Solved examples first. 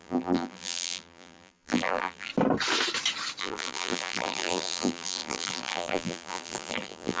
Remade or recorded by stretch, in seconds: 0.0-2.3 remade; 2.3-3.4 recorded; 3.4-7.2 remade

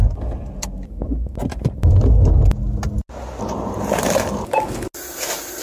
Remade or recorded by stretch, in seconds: 0.0-5.6 recorded

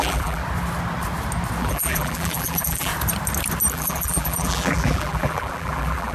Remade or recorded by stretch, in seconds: 0.0-0.4 remade; 0.4-1.6 recorded; 1.6-2.9 remade; 2.9-3.7 recorded; 3.7-6.1 remade